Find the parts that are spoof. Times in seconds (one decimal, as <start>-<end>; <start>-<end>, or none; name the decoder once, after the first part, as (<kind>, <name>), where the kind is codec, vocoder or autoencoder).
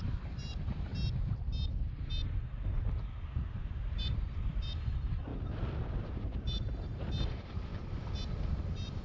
0.0-0.9 (vocoder, BigVGAN v2); 2.0-5.3; 6.0-7.7; 8.5-9.0